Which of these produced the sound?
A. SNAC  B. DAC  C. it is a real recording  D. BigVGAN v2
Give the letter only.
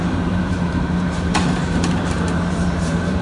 D